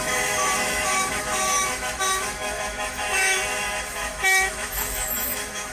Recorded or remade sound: remade